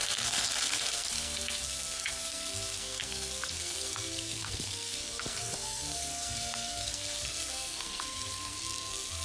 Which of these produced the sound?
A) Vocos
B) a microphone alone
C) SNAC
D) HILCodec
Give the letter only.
C